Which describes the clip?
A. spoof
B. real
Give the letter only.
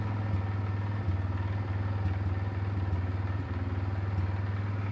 B